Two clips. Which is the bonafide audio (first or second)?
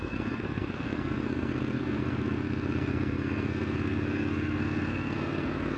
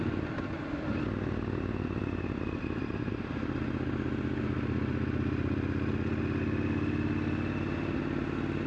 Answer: second